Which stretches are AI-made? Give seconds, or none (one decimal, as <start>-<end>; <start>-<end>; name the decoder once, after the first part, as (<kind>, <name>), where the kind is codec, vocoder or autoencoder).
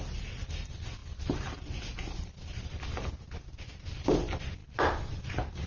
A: none